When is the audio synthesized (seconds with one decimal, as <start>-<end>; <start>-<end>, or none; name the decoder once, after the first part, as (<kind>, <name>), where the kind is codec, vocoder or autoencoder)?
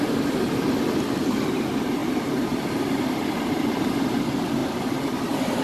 0.0-5.6 (vocoder, BigVGAN v2)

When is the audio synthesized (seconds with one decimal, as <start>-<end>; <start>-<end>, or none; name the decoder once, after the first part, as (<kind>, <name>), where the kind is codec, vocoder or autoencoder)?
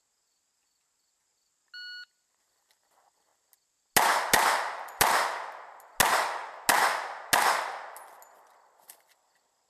none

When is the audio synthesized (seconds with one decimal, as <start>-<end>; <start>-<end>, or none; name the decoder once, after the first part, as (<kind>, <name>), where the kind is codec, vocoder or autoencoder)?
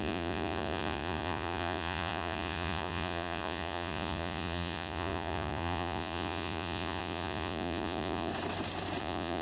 0.0-8.3 (vocoder, Vocos); 9.0-9.4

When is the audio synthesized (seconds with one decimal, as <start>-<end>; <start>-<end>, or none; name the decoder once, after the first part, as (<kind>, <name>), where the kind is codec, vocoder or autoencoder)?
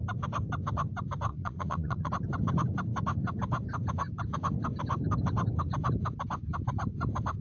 1.3-2.1 (vocoder, Vocos)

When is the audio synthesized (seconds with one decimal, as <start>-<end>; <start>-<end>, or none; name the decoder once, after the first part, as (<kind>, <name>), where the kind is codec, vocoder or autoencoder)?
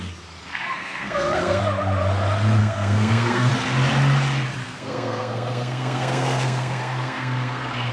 0.5-1.6 (codec, SNAC); 2.6-3.5; 4.6-7.9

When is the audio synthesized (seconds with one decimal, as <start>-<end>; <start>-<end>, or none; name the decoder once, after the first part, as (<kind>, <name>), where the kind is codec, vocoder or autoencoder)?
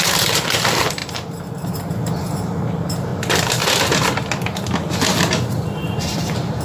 0.0-3.1 (vocoder, BigVGAN v2); 5.6-6.6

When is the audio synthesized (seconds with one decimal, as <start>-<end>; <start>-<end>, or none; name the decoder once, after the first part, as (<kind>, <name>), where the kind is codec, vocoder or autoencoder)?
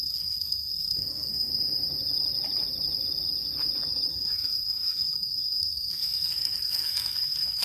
0.0-1.5 (codec, SNAC); 4.1-7.6